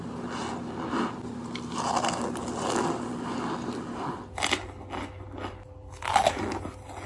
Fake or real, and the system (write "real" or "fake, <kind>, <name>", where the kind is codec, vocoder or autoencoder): real